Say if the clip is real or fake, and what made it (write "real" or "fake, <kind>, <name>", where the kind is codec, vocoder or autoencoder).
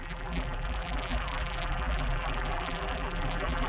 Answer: fake, vocoder, BigVGAN v2